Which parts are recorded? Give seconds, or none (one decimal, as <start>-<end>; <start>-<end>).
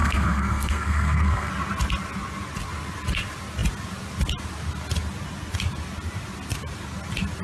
1.5-7.4